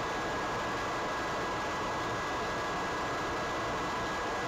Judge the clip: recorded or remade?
recorded